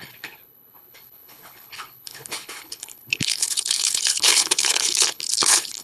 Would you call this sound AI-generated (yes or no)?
yes